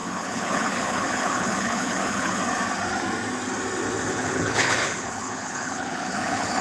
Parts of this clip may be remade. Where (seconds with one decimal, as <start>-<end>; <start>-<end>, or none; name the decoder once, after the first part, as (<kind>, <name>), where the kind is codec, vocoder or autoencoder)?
0.0-2.4 (codec, HILCodec); 4.1-6.6